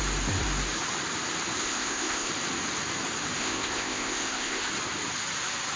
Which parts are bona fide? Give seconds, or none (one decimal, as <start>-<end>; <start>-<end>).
0.0-1.6; 2.3-3.4; 4.7-5.8